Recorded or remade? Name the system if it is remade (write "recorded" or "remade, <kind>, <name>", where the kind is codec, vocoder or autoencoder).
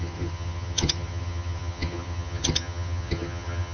remade, vocoder, HiFi-GAN